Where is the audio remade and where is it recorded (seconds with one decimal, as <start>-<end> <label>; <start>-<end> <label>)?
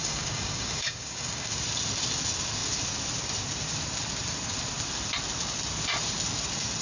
0.0-1.5 remade; 1.5-6.8 recorded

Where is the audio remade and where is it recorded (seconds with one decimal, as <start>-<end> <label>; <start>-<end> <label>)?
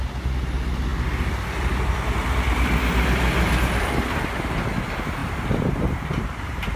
0.0-5.2 recorded; 5.2-6.8 remade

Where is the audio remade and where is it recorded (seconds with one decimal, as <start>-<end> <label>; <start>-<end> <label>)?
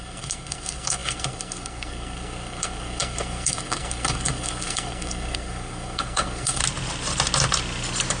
0.0-6.6 remade; 6.6-8.2 recorded